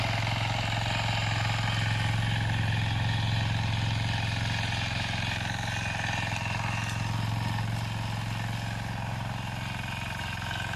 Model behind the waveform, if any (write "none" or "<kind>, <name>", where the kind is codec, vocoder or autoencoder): none